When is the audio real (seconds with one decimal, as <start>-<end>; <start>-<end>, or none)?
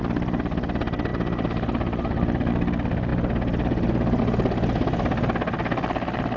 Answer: 0.0-6.4